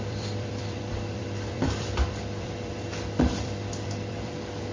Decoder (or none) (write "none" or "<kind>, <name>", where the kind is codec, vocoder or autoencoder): vocoder, BigVGAN v2